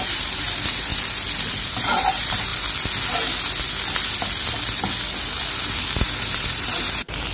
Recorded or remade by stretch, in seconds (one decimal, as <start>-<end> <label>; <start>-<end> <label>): 0.0-0.9 remade; 0.9-1.5 recorded; 1.5-2.5 remade; 2.5-6.2 recorded; 6.2-7.3 remade